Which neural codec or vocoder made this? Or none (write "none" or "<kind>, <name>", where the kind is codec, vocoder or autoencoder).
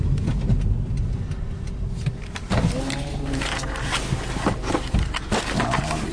none